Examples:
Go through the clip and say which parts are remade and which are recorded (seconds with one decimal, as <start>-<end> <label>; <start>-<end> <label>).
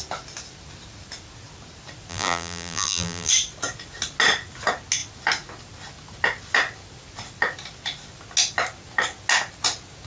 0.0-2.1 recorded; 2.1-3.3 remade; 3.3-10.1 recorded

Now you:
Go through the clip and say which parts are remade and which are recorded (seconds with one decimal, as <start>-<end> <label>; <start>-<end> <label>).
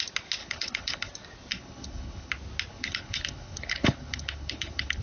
0.0-0.4 recorded; 0.4-1.1 remade; 1.1-1.5 recorded; 1.5-2.3 remade; 2.3-2.7 recorded; 2.7-5.0 remade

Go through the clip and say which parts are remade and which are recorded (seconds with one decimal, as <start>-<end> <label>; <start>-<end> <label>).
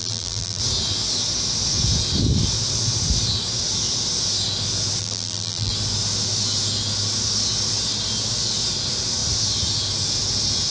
0.0-0.6 remade; 0.6-5.0 recorded; 5.0-5.7 remade; 5.7-10.7 recorded